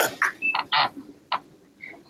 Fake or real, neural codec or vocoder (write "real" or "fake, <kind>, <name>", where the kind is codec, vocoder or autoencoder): fake, vocoder, BigVGAN v2